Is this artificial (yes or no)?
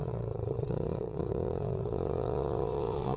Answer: yes